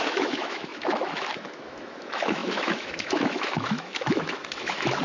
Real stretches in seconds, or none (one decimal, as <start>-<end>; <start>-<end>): none